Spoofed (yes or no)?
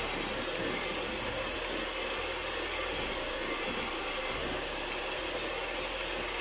no